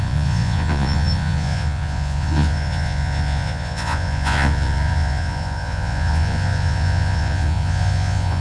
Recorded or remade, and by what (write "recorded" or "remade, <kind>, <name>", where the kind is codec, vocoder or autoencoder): remade, vocoder, Vocos